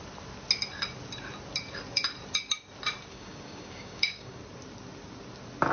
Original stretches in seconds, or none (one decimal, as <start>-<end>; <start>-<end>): 0.0-3.1; 4.4-5.7